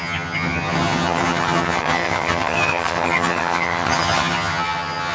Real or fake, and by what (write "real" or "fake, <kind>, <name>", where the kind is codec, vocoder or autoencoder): fake, vocoder, HiFi-GAN